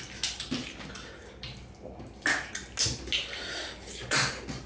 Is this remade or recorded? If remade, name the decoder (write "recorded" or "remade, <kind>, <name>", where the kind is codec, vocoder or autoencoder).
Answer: recorded